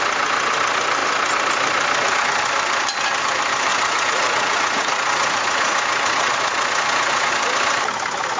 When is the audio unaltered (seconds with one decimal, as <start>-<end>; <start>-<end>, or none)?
0.0-3.7; 7.3-8.4